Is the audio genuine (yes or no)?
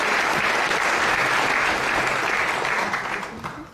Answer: yes